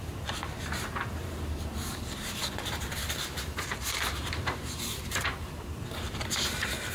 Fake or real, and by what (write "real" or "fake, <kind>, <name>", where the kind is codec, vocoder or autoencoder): fake, vocoder, BigVGAN v2